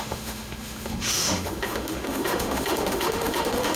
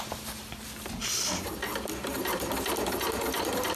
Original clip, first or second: second